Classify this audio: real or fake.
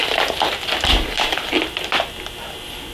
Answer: real